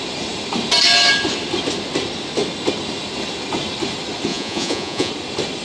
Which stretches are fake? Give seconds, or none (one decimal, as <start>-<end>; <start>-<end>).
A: 4.3-5.1